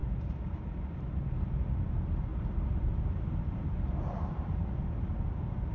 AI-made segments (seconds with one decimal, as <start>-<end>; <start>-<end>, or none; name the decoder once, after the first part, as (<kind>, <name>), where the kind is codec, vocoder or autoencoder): 0.0-0.7 (vocoder, BigVGAN v2); 2.3-4.7